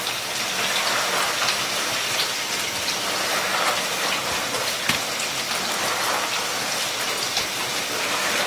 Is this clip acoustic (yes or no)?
yes